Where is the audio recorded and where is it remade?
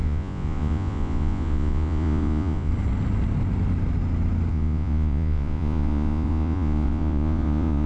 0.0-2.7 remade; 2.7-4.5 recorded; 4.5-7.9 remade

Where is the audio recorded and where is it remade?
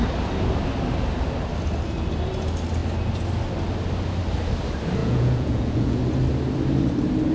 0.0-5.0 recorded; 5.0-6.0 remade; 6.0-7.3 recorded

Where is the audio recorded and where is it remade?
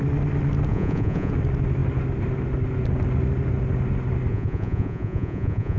0.0-0.7 recorded; 0.7-1.3 remade; 1.3-4.3 recorded; 4.3-5.8 remade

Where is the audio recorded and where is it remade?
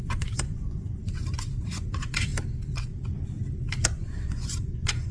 0.0-1.0 remade; 1.0-1.6 recorded; 1.6-2.3 remade; 2.3-3.9 recorded; 3.9-5.1 remade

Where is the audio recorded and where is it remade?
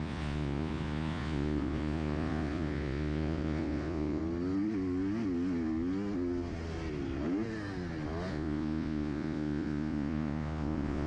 0.0-4.2 remade; 4.2-8.3 recorded; 8.3-11.1 remade